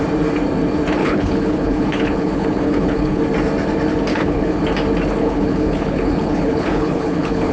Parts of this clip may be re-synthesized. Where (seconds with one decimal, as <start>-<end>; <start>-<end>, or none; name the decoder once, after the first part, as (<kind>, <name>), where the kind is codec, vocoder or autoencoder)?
1.0-3.2 (codec, HILCodec); 4.1-4.6; 5.2-7.5